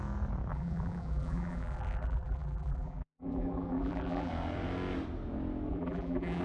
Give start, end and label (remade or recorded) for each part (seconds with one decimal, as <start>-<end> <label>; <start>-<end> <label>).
0.0-0.5 recorded; 0.5-4.3 remade; 4.3-5.7 recorded; 5.7-6.4 remade